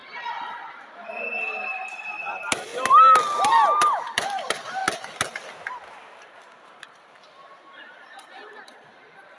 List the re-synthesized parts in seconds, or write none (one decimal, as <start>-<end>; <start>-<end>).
0.0-2.7; 3.4-4.8; 5.9-9.4